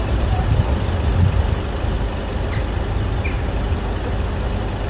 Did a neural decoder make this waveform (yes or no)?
no